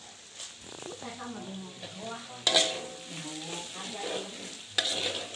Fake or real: real